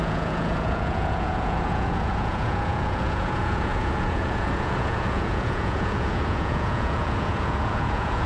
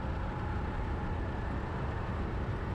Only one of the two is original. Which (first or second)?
second